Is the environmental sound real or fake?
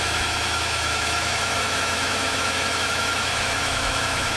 fake